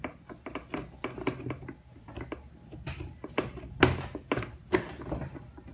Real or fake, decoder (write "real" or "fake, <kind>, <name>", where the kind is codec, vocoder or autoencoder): real